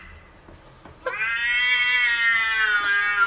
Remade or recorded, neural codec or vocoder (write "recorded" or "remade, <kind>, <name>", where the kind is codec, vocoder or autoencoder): recorded